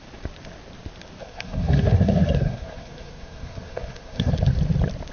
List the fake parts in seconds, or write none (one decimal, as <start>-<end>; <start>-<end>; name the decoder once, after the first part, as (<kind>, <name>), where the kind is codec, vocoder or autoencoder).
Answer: 1.2-4.3 (codec, SNAC)